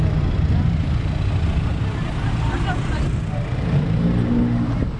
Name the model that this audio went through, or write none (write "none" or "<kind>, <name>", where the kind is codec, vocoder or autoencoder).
none